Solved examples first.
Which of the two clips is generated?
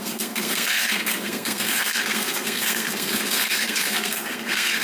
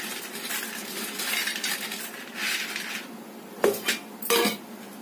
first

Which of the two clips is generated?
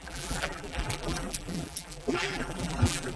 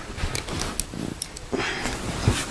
first